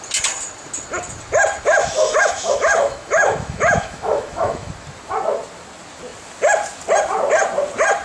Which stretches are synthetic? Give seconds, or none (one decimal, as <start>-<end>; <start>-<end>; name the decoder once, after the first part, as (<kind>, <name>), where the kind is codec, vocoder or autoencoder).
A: 1.8-4.7 (autoencoder, DAC-VAE)